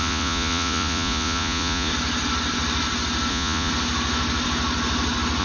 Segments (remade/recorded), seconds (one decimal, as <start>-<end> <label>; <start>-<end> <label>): 0.0-1.9 remade; 1.9-3.3 recorded; 3.3-3.7 remade; 3.7-5.4 recorded